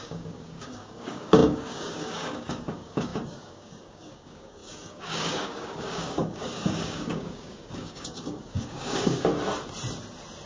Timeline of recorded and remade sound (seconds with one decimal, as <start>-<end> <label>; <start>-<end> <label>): 0.0-9.3 remade; 9.3-10.5 recorded